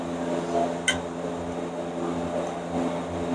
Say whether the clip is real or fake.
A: real